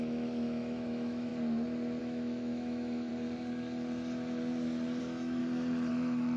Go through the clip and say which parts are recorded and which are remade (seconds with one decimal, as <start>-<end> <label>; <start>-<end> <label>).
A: 0.0-1.3 remade; 1.3-2.0 recorded; 2.0-3.1 remade; 3.1-5.0 recorded; 5.0-5.4 remade; 5.4-5.9 recorded; 5.9-6.4 remade